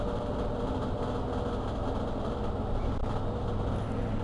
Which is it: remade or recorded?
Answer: recorded